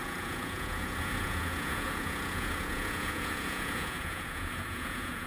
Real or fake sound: fake